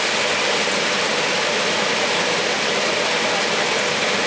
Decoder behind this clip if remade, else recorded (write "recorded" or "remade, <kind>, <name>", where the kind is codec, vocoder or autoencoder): recorded